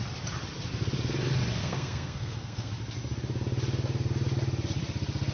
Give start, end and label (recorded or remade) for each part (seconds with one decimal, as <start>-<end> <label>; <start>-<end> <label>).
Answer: 0.0-1.6 recorded; 1.6-2.7 remade; 2.7-5.3 recorded